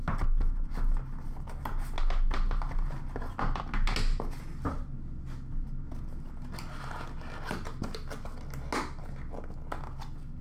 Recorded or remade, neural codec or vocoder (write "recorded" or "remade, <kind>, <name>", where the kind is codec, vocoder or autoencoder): recorded